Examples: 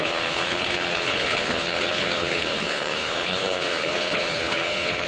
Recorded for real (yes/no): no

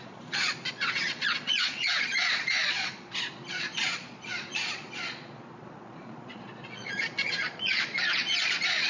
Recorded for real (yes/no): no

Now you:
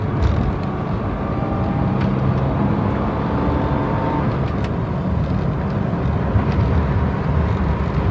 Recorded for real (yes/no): yes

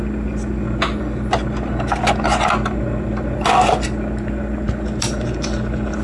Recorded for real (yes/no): yes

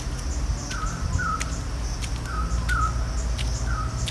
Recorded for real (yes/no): yes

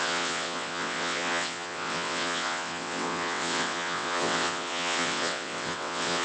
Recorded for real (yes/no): no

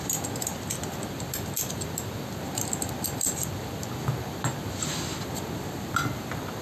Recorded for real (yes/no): yes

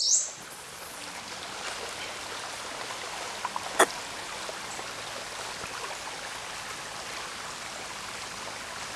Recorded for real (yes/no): yes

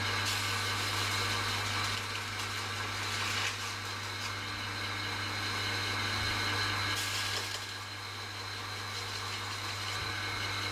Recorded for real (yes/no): yes